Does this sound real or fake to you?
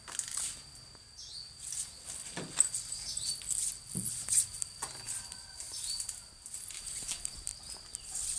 real